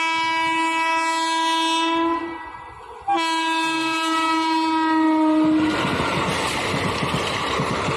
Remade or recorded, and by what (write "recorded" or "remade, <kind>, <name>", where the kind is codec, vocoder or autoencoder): recorded